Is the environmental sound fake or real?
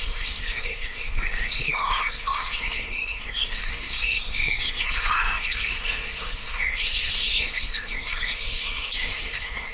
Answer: fake